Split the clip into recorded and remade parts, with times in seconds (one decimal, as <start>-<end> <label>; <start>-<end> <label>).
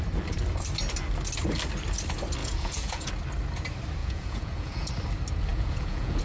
0.0-2.4 recorded; 2.4-3.1 remade; 3.1-4.0 recorded; 4.0-4.9 remade; 4.9-5.5 recorded; 5.5-6.2 remade